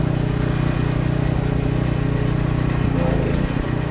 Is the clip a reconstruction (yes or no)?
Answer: no